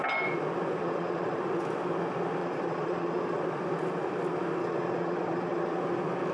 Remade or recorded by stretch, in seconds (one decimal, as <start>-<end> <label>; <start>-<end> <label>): 0.0-0.8 recorded; 0.8-1.4 remade; 1.4-2.4 recorded; 2.4-3.4 remade; 3.4-4.6 recorded; 4.6-5.8 remade; 5.8-6.3 recorded